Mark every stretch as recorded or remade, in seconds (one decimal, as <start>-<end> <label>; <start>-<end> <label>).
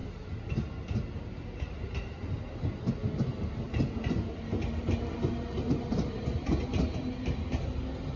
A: 0.0-8.2 recorded